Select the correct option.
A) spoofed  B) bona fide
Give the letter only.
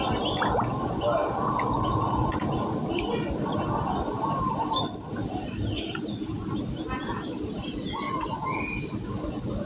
B